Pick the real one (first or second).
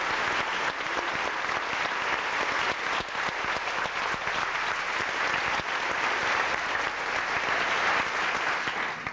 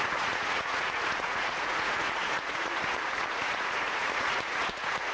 first